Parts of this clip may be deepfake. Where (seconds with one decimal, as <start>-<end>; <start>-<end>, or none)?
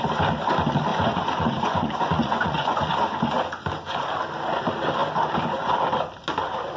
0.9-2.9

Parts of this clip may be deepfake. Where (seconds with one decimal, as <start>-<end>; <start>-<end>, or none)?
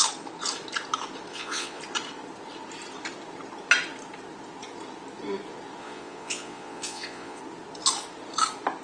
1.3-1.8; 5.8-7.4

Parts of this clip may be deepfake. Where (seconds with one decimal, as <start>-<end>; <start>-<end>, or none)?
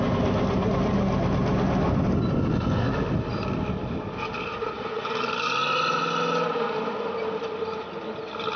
4.5-5.1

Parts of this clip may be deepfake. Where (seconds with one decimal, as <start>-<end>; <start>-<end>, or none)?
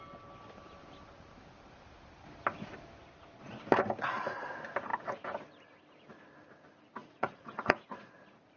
7.0-8.1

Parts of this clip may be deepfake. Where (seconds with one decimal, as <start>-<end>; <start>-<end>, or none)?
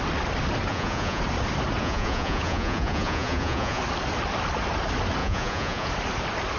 0.7-1.2; 1.8-3.8; 5.2-5.9